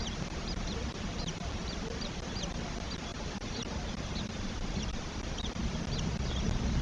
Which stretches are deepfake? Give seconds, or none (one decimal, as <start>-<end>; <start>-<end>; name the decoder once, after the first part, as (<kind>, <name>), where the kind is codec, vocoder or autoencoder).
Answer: 3.1-5.1 (vocoder, BigVGAN v2)